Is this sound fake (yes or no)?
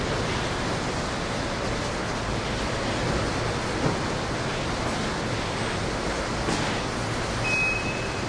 no